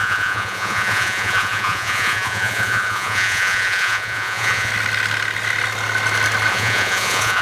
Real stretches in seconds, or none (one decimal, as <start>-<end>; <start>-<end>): 4.7-6.5